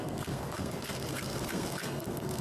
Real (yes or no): no